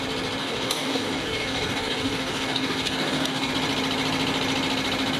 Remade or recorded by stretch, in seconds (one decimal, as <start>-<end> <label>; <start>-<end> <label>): 0.0-0.4 recorded; 0.4-3.5 remade; 3.5-5.2 recorded